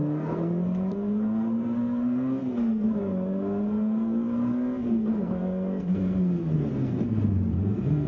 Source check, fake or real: fake